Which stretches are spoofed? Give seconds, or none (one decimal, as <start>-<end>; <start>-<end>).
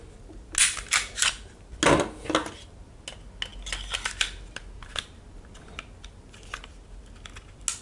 none